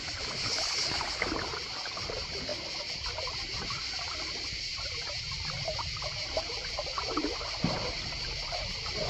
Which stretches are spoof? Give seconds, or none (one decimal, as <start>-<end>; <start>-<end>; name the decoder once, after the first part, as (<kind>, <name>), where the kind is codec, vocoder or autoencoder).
4.7-8.1 (vocoder, BigVGAN v2)